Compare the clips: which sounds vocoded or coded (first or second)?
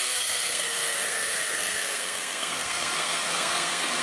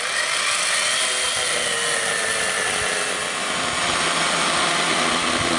first